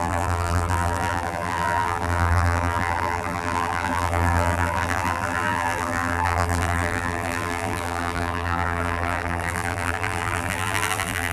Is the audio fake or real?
fake